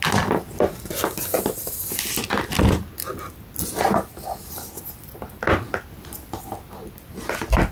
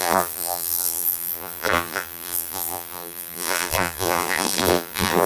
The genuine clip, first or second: first